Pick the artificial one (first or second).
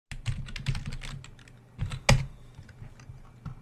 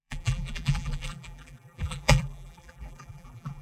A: second